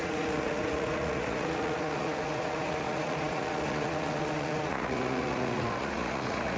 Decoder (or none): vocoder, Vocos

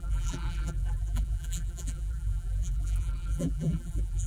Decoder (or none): vocoder, BigVGAN v2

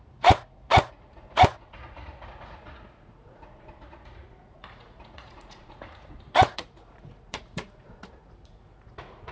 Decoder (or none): vocoder, Vocos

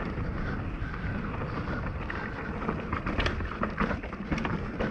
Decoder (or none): none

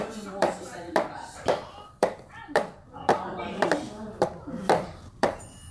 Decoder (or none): vocoder, BigVGAN v2